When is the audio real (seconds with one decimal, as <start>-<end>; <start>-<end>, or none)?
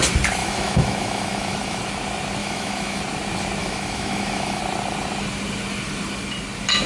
0.0-0.4; 1.8-2.4; 3.0-3.6; 4.6-6.9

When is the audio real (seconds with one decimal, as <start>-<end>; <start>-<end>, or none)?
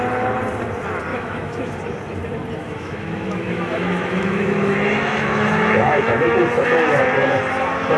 0.0-1.1; 1.7-2.6; 7.0-8.0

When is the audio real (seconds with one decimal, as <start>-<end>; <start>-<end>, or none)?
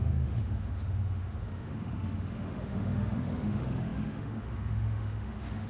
none